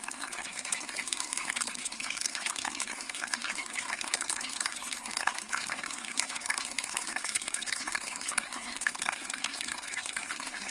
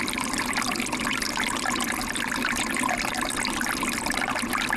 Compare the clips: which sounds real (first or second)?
second